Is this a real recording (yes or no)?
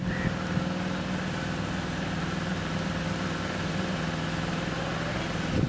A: yes